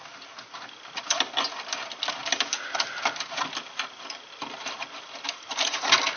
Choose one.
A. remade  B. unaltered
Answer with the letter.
B